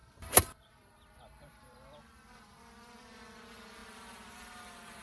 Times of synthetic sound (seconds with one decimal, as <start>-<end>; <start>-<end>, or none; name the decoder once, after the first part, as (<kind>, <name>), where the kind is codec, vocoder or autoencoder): 0.0-5.0 (vocoder, BigVGAN v2)

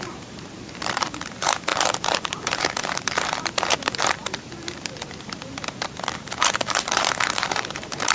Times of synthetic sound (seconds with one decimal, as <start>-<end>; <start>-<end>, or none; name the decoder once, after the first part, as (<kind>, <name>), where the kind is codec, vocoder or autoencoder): 0.0-8.1 (vocoder, BigVGAN v2)

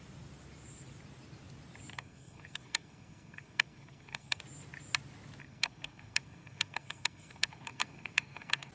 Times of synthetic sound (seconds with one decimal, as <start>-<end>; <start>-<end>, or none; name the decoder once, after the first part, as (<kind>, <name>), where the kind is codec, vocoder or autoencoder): 1.9-4.4 (codec, SNAC); 5.4-8.7

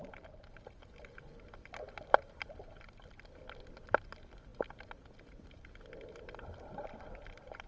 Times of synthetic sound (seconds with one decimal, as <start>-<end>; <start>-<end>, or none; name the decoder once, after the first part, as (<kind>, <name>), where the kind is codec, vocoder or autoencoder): none

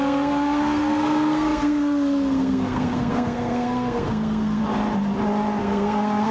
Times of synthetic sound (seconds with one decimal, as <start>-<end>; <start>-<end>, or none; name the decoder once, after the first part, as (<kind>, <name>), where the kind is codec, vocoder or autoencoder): 0.0-4.6 (codec, SNAC); 5.6-6.3

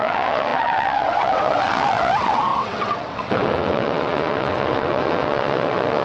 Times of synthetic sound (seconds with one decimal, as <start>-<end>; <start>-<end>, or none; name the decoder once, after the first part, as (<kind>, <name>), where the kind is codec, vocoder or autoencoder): 0.0-6.0 (vocoder, WaveNeXt)

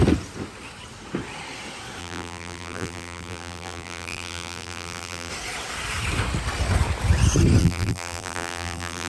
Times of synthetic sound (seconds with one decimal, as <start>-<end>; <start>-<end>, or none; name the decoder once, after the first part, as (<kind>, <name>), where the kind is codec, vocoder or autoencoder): 2.0-5.3 (vocoder, BigVGAN v2); 7.6-9.1

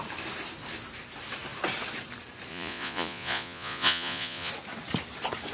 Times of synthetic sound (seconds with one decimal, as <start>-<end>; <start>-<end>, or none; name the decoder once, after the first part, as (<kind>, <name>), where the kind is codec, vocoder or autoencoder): 2.5-4.5 (vocoder, Vocos)